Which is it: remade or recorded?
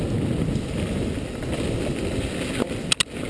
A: recorded